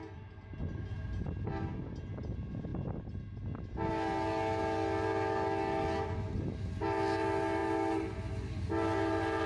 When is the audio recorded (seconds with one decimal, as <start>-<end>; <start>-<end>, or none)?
0.0-9.5